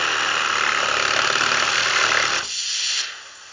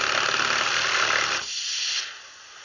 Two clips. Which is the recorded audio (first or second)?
first